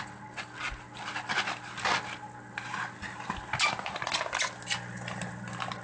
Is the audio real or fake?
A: real